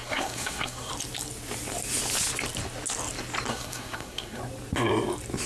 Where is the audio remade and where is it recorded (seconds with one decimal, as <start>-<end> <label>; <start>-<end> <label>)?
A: 0.0-0.9 remade; 0.9-3.5 recorded; 3.5-4.4 remade; 4.4-5.5 recorded